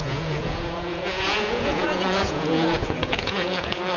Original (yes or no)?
no